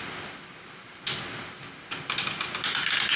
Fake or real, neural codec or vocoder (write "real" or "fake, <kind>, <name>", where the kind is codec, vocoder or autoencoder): real